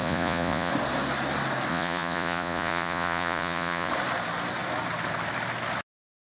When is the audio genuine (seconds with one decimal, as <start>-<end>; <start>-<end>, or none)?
0.7-1.7; 3.9-6.2